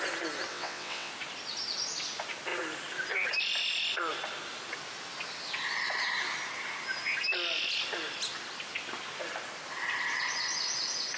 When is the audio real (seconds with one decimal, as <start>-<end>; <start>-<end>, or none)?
0.0-0.5; 1.1-11.2